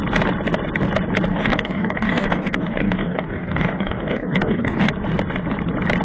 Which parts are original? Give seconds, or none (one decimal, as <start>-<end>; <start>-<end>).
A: 0.0-1.3; 4.9-6.0